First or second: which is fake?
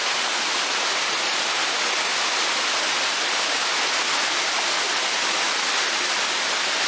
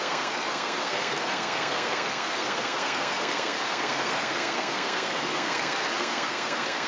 second